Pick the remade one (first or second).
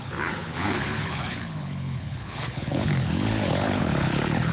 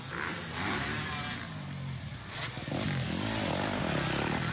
first